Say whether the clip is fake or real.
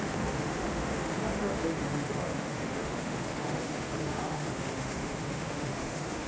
fake